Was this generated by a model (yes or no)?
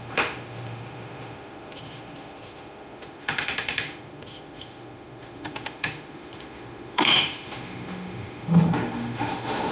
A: yes